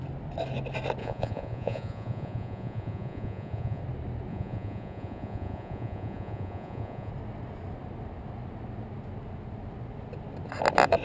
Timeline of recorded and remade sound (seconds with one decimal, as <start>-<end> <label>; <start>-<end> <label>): 0.0-1.0 recorded; 1.0-3.8 remade; 3.8-4.3 recorded; 4.3-7.1 remade; 7.1-11.0 recorded